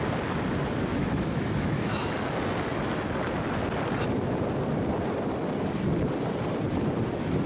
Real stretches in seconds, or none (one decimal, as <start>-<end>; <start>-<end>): 0.0-0.9; 2.1-7.5